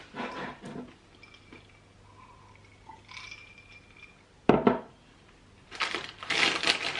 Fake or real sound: real